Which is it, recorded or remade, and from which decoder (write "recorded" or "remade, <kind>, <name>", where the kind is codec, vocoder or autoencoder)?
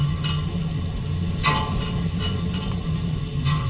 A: recorded